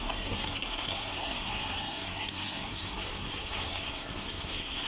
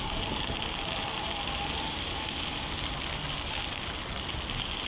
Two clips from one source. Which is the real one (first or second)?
second